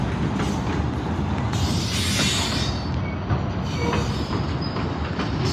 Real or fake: real